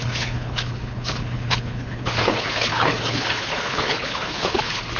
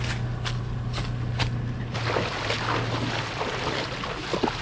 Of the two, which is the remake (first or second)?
first